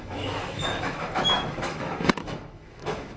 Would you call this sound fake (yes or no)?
yes